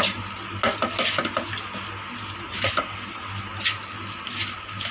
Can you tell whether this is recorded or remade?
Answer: recorded